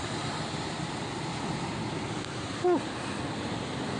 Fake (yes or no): yes